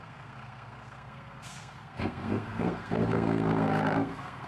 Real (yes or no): no